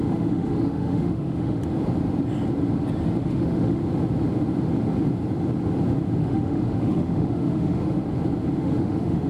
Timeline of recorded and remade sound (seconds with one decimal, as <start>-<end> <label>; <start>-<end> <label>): 0.0-1.6 remade; 1.6-3.2 recorded; 3.2-3.8 remade; 3.8-6.2 recorded; 6.2-8.0 remade; 8.0-8.6 recorded; 8.6-9.3 remade